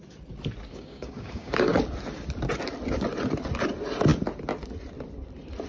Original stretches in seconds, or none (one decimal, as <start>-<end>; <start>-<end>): 0.0-0.7; 1.7-5.7